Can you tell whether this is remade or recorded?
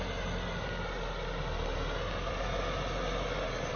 recorded